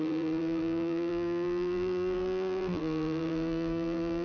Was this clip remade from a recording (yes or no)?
yes